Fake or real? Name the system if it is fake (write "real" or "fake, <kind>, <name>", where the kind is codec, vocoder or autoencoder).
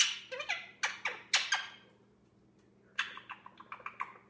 real